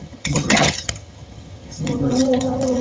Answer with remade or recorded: remade